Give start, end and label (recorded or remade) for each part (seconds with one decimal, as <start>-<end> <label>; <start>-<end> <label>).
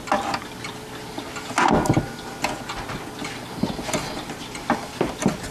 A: 0.0-5.5 recorded